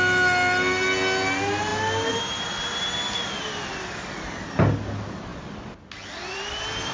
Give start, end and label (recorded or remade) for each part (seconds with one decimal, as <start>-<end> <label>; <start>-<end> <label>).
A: 0.0-6.9 recorded